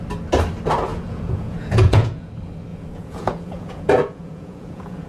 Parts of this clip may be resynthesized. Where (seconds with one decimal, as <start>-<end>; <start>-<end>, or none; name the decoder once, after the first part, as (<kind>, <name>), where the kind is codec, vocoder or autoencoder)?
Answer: 0.9-2.3 (vocoder, Vocos); 2.7-5.1